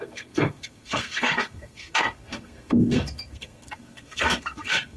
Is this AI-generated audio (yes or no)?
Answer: yes